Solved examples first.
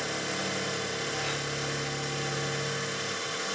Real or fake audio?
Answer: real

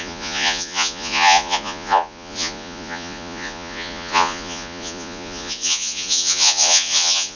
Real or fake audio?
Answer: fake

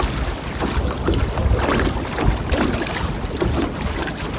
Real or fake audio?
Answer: real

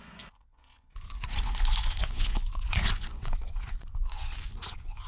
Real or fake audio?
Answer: fake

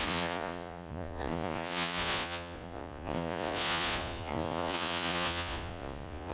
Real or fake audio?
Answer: fake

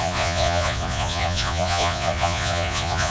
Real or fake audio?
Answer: fake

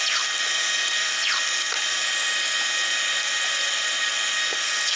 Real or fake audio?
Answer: real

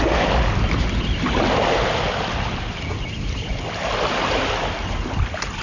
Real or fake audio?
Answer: real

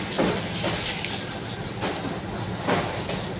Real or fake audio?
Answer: real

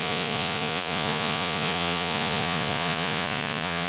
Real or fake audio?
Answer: fake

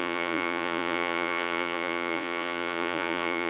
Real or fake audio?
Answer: fake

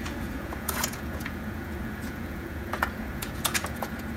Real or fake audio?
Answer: fake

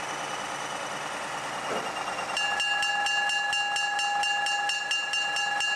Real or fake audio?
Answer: real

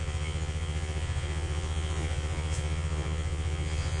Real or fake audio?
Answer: fake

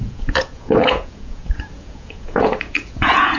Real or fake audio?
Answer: fake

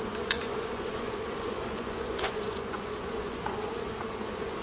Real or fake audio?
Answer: fake